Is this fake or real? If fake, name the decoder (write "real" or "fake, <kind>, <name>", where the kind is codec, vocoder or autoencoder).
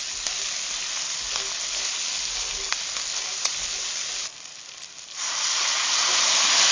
real